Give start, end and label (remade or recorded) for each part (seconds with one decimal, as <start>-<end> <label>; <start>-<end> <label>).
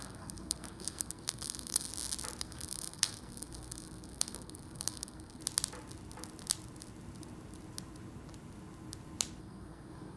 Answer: 0.0-1.9 remade; 1.9-2.4 recorded; 2.4-5.4 remade; 5.4-9.4 recorded; 9.4-10.2 remade